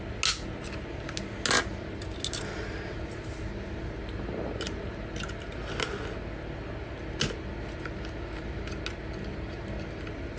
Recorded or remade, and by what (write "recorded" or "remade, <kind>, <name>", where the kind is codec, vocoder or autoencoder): recorded